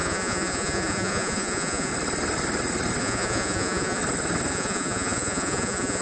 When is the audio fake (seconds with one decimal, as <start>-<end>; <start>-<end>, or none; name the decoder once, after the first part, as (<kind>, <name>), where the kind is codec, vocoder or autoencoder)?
0.0-1.9 (vocoder, Vocos); 3.0-4.0; 4.5-6.0